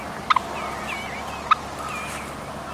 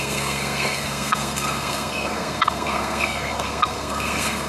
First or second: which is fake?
second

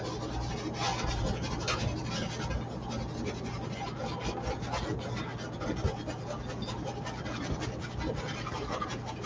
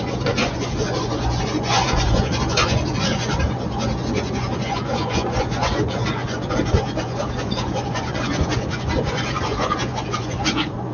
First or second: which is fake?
second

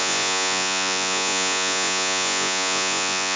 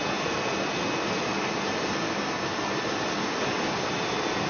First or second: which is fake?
first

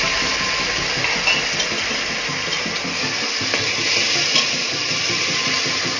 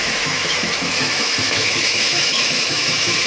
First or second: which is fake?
second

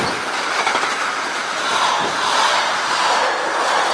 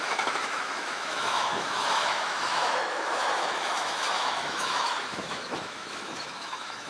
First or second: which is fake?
second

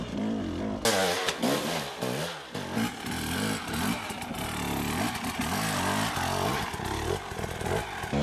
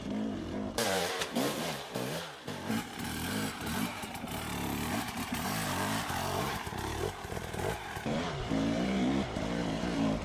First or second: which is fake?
second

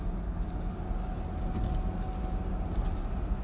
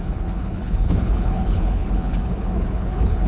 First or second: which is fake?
second